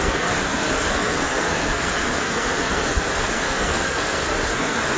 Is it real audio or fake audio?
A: fake